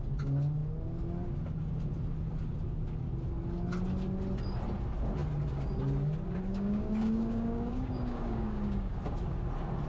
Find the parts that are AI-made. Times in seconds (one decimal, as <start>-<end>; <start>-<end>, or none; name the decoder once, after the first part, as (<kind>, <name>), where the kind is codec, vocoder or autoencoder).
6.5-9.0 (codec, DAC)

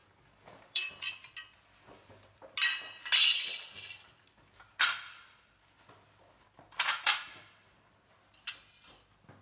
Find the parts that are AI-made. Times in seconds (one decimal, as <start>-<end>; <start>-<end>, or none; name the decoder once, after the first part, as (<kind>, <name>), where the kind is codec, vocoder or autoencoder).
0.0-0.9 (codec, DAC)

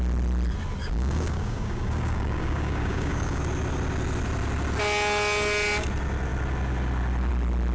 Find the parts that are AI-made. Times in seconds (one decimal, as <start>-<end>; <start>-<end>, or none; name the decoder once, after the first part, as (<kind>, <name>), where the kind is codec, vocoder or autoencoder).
0.8-3.4 (codec, DAC)

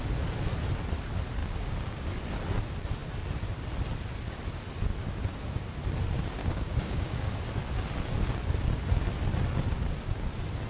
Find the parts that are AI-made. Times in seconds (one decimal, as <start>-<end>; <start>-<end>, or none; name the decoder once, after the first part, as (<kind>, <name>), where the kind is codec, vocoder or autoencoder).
1.4-2.1 (codec, DAC); 6.4-7.3